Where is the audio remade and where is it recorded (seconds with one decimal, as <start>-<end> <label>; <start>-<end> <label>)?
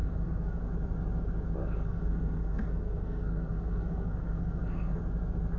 0.0-0.7 remade; 0.7-1.6 recorded; 1.6-5.0 remade; 5.0-5.6 recorded